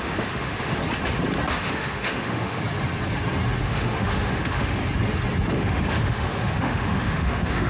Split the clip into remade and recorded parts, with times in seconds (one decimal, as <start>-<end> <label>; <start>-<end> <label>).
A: 0.0-0.8 remade; 0.8-1.6 recorded; 1.6-2.6 remade; 2.6-3.6 recorded; 3.6-4.8 remade; 4.8-5.5 recorded; 5.5-7.7 remade